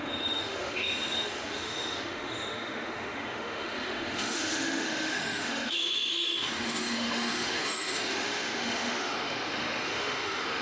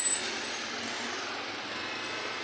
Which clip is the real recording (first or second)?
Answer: second